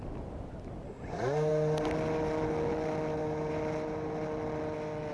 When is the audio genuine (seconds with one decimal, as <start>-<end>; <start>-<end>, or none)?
0.0-5.1